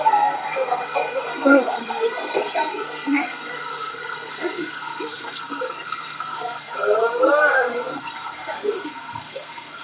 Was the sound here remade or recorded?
remade